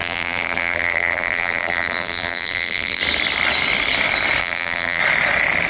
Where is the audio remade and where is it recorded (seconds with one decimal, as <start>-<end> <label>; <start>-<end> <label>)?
0.0-3.0 remade; 3.0-4.4 recorded; 4.4-5.0 remade; 5.0-5.7 recorded

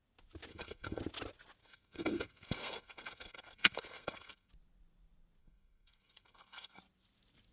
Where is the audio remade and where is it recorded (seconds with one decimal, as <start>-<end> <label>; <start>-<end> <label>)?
0.0-0.5 recorded; 0.5-1.0 remade; 1.0-1.6 recorded; 1.6-4.5 remade; 4.5-5.4 recorded; 5.4-6.8 remade; 6.8-7.5 recorded

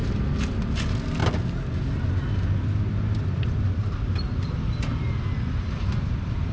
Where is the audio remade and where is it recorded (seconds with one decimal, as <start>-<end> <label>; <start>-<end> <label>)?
0.0-6.5 recorded

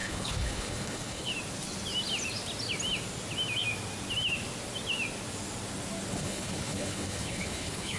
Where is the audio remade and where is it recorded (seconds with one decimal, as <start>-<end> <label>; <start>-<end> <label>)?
0.0-1.3 remade; 1.3-6.1 recorded; 6.1-8.0 remade

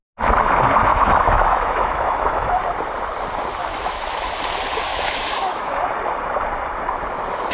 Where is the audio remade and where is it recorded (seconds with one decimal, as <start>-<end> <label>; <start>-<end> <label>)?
0.0-0.9 recorded; 0.9-2.6 remade; 2.6-3.6 recorded; 3.6-4.3 remade; 4.3-4.9 recorded; 4.9-5.8 remade; 5.8-7.5 recorded

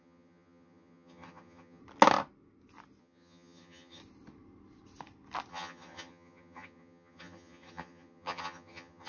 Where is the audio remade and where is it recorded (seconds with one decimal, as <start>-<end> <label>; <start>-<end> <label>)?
0.0-1.8 remade; 1.8-3.0 recorded; 3.0-4.0 remade; 4.0-5.5 recorded; 5.5-9.1 remade

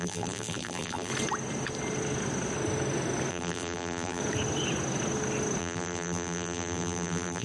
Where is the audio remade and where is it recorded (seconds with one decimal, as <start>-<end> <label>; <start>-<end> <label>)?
0.0-1.1 remade; 1.1-3.3 recorded; 3.3-4.2 remade; 4.2-5.6 recorded; 5.6-7.4 remade